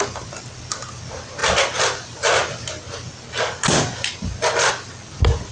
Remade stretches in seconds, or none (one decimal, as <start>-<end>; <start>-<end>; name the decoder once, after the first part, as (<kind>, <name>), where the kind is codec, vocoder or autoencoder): none